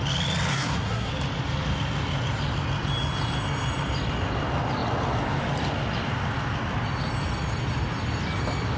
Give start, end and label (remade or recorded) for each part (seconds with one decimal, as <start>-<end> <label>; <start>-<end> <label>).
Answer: 0.0-0.5 recorded; 0.5-1.1 remade; 1.1-8.8 recorded